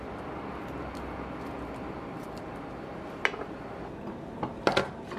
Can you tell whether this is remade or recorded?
recorded